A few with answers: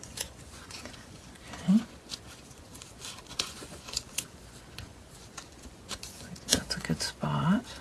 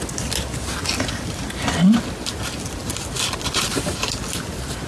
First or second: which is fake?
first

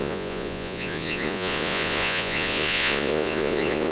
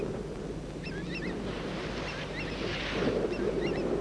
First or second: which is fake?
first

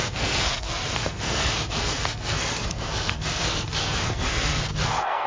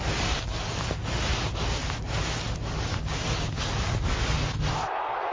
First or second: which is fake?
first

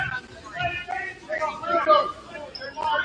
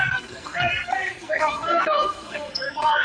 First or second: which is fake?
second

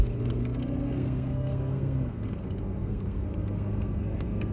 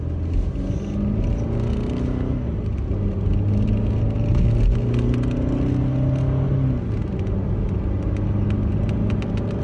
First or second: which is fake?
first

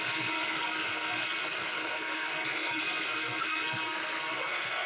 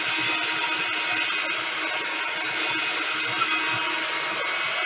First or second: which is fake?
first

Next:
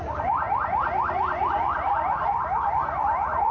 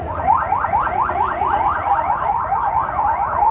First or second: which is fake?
second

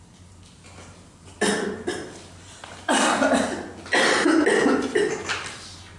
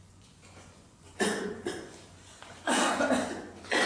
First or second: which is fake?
second